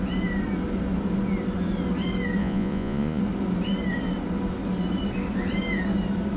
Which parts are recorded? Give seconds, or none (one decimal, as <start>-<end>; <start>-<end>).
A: 0.0-2.4; 3.2-6.4